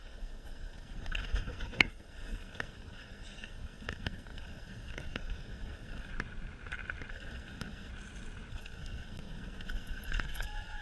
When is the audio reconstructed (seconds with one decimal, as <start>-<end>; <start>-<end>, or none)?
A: 0.0-6.1; 7.1-7.9; 8.5-10.8

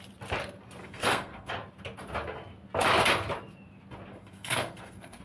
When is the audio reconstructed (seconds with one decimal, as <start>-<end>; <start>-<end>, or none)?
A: 0.8-1.5; 4.1-5.2

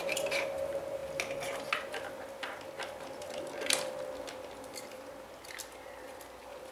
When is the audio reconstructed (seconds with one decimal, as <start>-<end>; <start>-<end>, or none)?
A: none